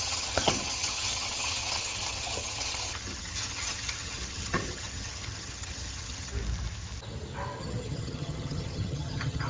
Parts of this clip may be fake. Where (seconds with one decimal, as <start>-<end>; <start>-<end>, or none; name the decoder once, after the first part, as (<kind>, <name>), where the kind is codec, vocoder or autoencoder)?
0.0-6.3 (vocoder, HiFi-GAN); 7.6-9.5